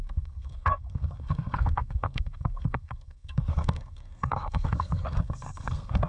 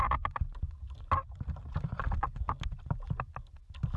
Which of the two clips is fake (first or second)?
first